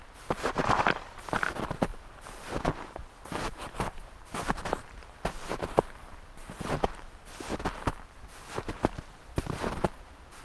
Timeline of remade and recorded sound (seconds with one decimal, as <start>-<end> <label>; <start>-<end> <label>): 0.0-1.9 recorded; 1.9-7.1 remade; 7.1-9.3 recorded; 9.3-10.4 remade